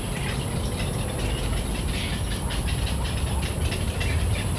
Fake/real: fake